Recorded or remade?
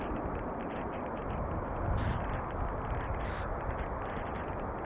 recorded